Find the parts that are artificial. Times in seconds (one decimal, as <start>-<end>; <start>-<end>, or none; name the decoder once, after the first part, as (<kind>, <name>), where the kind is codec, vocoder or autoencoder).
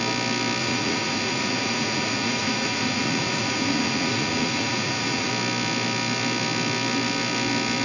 0.6-5.3 (vocoder, Vocos)